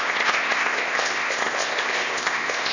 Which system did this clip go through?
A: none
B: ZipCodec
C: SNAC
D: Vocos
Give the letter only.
B